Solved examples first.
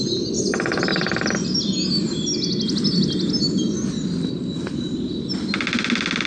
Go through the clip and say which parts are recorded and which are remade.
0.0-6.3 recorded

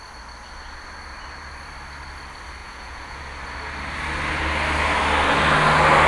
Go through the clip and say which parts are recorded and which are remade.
0.0-2.6 recorded; 2.6-3.2 remade; 3.2-6.1 recorded

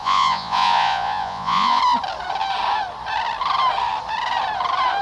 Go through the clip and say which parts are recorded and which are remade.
0.0-1.8 remade; 1.8-5.0 recorded

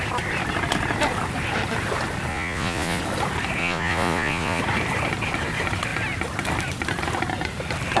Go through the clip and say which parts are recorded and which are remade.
0.0-2.3 recorded; 2.3-3.0 remade; 3.0-3.6 recorded; 3.6-4.6 remade; 4.6-8.0 recorded

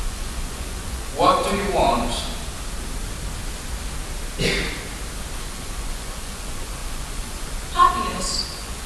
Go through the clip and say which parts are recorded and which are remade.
0.0-2.1 remade; 2.1-5.4 recorded; 5.4-8.9 remade

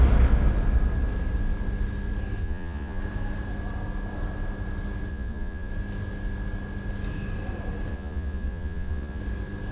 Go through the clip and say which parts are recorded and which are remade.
0.0-2.4 recorded; 2.4-3.0 remade; 3.0-5.1 recorded; 5.1-5.7 remade; 5.7-7.9 recorded; 7.9-9.2 remade; 9.2-9.7 recorded

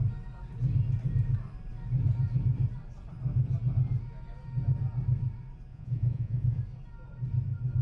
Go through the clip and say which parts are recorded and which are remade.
0.0-5.7 recorded; 5.7-6.6 remade; 6.6-7.8 recorded

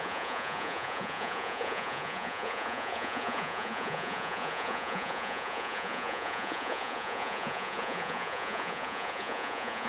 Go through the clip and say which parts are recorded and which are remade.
0.0-9.9 remade